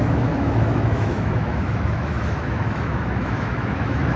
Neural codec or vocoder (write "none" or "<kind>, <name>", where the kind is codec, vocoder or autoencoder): autoencoder, DAC-VAE